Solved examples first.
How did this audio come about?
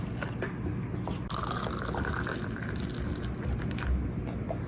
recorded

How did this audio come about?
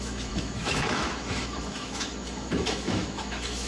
remade